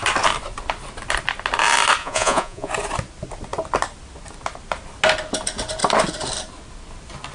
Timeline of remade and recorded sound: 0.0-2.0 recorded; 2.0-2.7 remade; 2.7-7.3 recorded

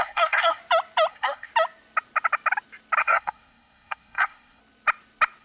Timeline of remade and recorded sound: 0.0-0.6 remade; 0.6-1.1 recorded; 1.1-1.5 remade; 1.5-3.0 recorded; 3.0-4.6 remade; 4.6-5.4 recorded

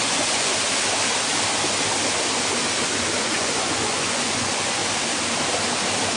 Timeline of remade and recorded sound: 0.0-0.5 remade; 0.5-3.2 recorded; 3.2-4.8 remade; 4.8-6.2 recorded

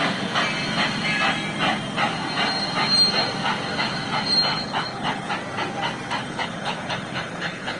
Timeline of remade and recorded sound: 0.0-4.5 recorded; 4.5-5.3 remade; 5.3-6.2 recorded; 6.2-7.8 remade

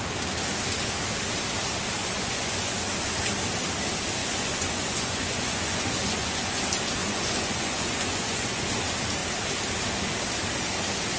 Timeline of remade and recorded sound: 0.0-2.0 recorded; 2.0-2.8 remade; 2.8-4.2 recorded; 4.2-6.6 remade; 6.6-7.0 recorded; 7.0-8.6 remade; 8.6-11.2 recorded

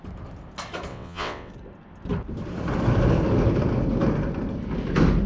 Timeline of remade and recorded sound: 0.0-0.9 recorded; 0.9-1.5 remade; 1.5-5.3 recorded